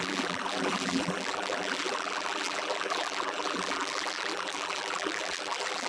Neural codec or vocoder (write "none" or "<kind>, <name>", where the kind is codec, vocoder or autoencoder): vocoder, BigVGAN v2